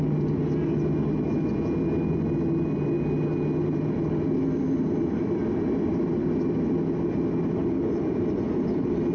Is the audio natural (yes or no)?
yes